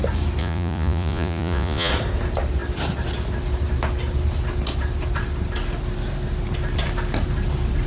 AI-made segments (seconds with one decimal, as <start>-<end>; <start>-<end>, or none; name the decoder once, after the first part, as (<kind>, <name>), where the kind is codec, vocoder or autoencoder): 0.4-1.9 (vocoder, Vocos)